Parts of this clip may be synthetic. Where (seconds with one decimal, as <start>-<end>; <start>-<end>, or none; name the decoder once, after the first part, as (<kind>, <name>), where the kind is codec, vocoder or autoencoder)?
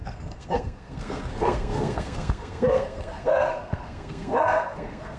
0.0-5.2 (codec, SNAC)